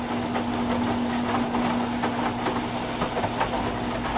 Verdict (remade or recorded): recorded